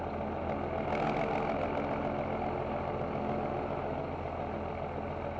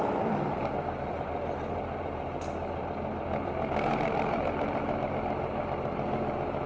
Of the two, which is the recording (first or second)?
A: first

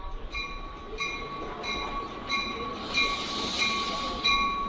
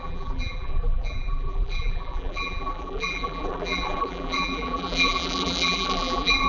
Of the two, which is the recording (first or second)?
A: first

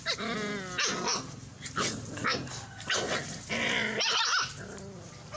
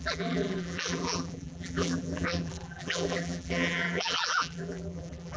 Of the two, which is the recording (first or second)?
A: first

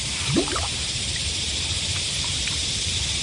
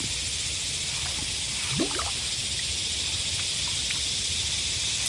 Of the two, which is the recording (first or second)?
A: second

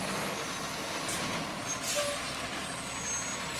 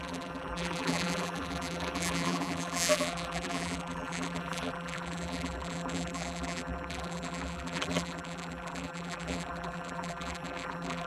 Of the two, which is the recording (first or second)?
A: first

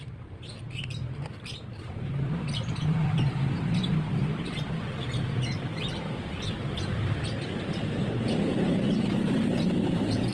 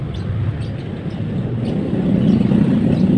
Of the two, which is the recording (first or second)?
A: second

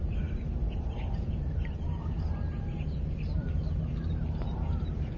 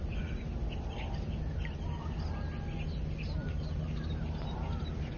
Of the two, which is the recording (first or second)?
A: second